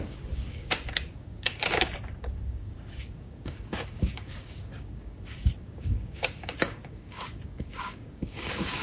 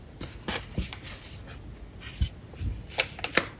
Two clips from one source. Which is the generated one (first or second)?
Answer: first